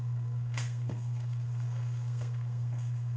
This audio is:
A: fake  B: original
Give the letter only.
A